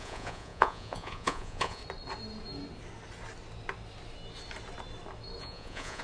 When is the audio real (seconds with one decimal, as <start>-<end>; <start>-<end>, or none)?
1.8-5.4